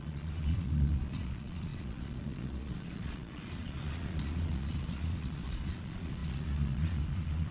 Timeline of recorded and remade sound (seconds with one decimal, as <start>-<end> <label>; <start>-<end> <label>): 0.0-7.5 remade